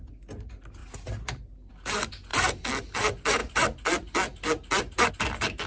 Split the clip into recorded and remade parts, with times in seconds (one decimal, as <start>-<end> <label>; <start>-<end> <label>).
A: 0.0-5.7 recorded